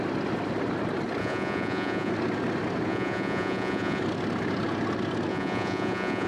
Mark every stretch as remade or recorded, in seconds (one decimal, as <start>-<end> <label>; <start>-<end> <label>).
0.0-1.2 recorded; 1.2-2.1 remade; 2.1-2.9 recorded; 2.9-4.0 remade; 4.0-5.3 recorded; 5.3-6.3 remade